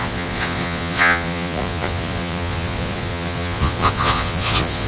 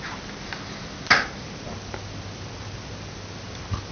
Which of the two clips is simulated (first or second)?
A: first